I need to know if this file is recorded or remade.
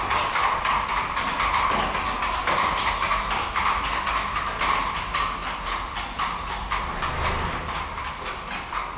recorded